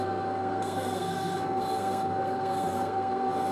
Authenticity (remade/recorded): remade